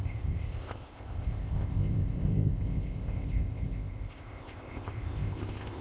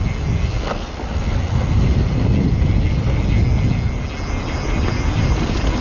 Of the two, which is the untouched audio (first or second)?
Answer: second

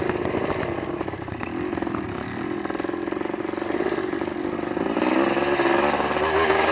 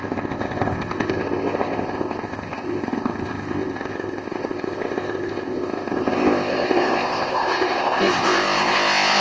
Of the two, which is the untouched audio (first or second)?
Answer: first